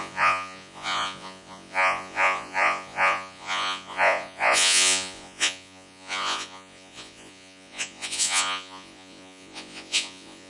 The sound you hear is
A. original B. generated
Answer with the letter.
B